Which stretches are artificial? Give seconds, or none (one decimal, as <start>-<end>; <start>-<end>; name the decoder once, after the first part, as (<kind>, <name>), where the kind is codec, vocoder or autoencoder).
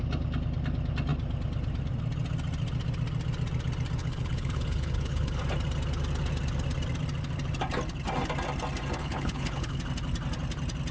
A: 4.0-5.4 (codec, HILCodec); 9.0-9.8